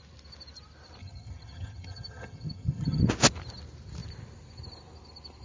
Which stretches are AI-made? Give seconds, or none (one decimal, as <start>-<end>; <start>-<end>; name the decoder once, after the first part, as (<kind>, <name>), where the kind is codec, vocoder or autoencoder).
1.0-3.0 (vocoder, HiFi-GAN)